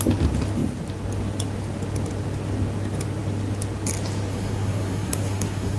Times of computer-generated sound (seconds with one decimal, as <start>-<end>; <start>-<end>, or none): 4.3-5.8